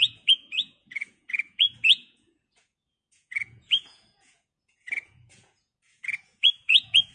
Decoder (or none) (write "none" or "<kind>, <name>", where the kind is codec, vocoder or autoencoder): vocoder, Vocos